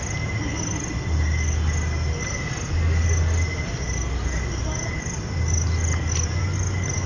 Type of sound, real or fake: real